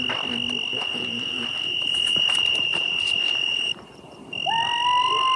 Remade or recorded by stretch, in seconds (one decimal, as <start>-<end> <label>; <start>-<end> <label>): 0.0-0.7 recorded; 0.7-3.7 remade; 3.7-5.4 recorded